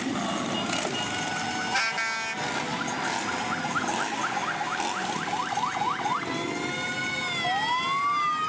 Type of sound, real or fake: real